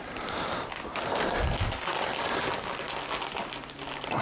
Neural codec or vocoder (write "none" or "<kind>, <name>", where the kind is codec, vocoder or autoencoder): none